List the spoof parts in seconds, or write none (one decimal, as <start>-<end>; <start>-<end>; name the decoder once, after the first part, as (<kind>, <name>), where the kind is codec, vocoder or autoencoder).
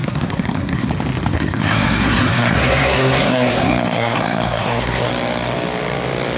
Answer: 0.0-0.9 (codec, SNAC); 1.3-5.1